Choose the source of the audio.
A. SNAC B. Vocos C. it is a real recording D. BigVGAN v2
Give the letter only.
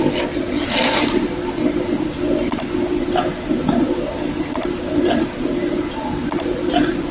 C